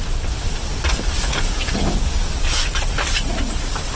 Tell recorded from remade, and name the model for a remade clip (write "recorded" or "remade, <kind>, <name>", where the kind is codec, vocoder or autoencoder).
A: recorded